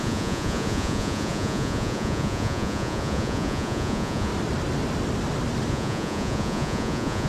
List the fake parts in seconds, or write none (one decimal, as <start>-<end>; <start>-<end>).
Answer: 0.0-4.3; 5.7-7.3